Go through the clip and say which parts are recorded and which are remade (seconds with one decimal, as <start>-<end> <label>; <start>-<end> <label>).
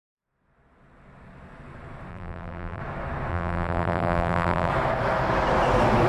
0.0-2.1 recorded; 2.1-2.8 remade; 2.8-3.3 recorded; 3.3-4.7 remade; 4.7-6.1 recorded